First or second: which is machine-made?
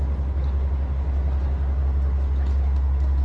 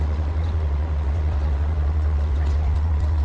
second